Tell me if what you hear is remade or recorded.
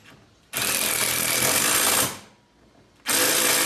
recorded